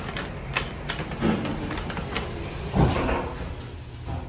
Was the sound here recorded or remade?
recorded